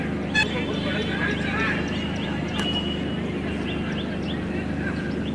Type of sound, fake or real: real